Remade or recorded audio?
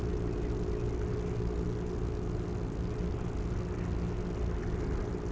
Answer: recorded